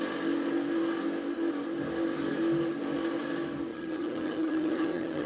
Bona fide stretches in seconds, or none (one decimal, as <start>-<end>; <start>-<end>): 0.0-3.7